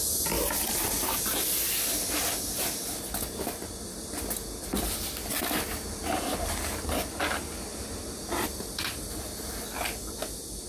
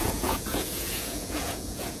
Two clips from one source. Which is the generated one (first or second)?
second